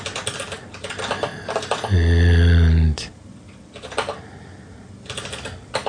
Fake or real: real